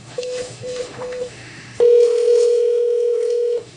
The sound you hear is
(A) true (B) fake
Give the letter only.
B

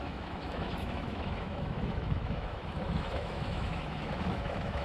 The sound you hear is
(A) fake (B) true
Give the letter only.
A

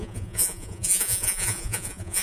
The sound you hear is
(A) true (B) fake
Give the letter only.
B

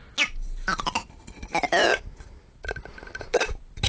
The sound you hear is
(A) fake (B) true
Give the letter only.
B